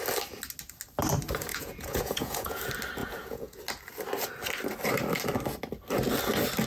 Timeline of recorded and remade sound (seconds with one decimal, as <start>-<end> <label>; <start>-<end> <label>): 0.0-1.5 recorded; 1.5-2.6 remade; 2.6-3.0 recorded; 3.0-3.6 remade; 3.6-6.7 recorded